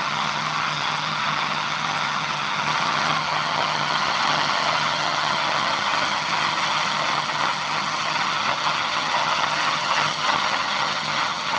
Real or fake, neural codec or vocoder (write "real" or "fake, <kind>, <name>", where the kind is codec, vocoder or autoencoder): fake, vocoder, HiFi-GAN